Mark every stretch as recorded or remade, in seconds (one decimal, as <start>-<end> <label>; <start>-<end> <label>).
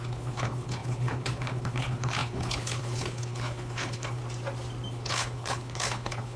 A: 0.0-4.2 remade; 4.2-4.9 recorded; 4.9-6.4 remade